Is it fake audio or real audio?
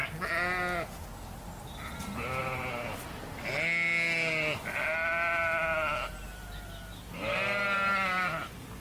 real